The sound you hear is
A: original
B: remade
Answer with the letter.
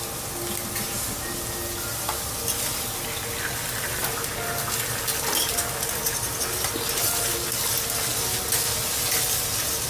A